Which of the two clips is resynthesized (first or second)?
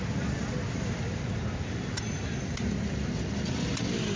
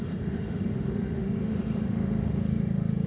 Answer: second